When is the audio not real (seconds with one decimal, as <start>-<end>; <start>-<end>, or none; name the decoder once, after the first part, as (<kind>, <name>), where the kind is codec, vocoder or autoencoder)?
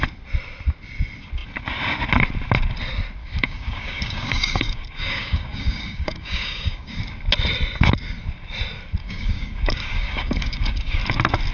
3.2-7.0 (codec, DAC); 9.0-11.0